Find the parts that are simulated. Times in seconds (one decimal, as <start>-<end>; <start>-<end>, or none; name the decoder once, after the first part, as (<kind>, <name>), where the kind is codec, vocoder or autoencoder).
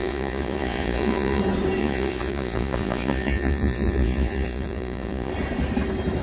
0.0-1.4 (vocoder, Vocos); 1.8-5.3